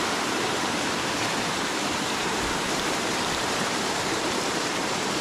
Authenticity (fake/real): fake